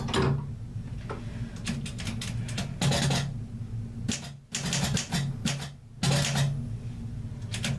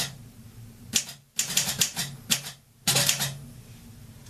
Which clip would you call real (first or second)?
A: first